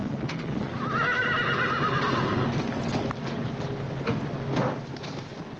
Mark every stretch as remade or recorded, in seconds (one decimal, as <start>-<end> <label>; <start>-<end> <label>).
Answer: 0.0-0.7 remade; 0.7-5.6 recorded